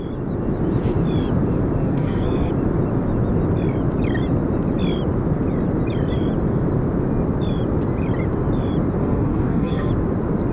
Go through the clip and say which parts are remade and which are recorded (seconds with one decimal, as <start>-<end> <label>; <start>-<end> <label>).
0.0-1.8 recorded; 1.8-2.5 remade; 2.5-9.0 recorded; 9.0-9.9 remade; 9.9-10.5 recorded